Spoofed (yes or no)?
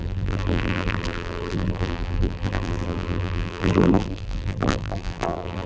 yes